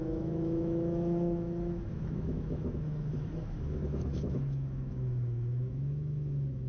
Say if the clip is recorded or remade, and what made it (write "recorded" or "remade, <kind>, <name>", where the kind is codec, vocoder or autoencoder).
remade, autoencoder, DAC-VAE